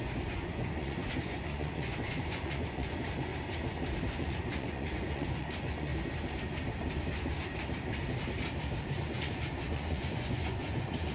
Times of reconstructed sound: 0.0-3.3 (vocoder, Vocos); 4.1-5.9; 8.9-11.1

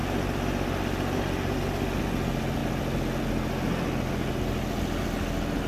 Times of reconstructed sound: none